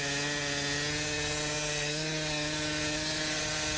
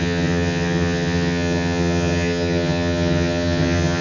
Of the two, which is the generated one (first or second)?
second